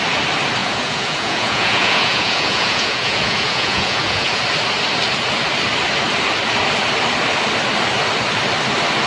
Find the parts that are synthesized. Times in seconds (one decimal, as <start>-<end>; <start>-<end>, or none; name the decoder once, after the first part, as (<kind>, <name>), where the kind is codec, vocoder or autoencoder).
0.6-4.4 (vocoder, Vocos)